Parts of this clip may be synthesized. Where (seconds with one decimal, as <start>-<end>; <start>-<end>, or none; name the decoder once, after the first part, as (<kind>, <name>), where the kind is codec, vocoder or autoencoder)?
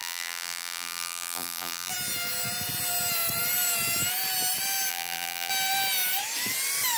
0.0-1.9 (vocoder, BigVGAN v2); 4.9-5.5